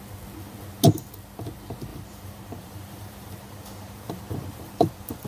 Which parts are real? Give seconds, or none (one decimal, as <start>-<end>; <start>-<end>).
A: 0.0-1.9